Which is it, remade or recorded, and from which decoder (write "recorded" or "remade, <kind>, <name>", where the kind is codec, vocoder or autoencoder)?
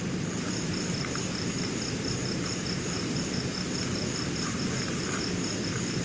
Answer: recorded